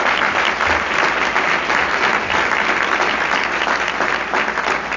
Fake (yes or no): no